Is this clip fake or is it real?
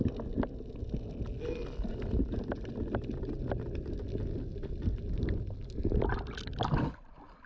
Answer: real